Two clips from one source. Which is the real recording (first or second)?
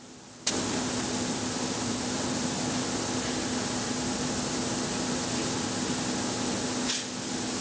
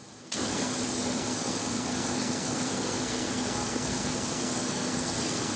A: first